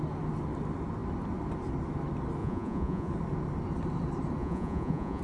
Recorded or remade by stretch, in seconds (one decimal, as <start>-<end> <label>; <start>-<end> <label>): 0.0-2.4 recorded; 2.4-3.1 remade; 3.1-4.4 recorded; 4.4-5.2 remade